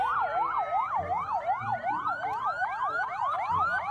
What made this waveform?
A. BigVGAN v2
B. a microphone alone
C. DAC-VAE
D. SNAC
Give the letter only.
A